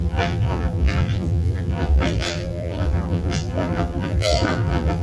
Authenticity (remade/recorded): remade